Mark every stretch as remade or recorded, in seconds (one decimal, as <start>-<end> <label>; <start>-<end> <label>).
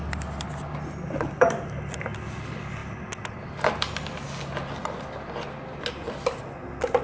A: 0.0-7.0 recorded